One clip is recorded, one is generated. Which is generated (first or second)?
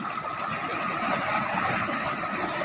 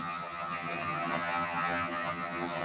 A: second